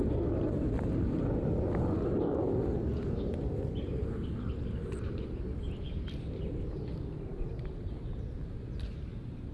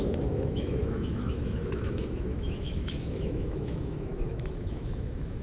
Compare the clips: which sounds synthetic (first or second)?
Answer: second